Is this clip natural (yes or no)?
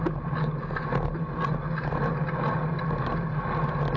yes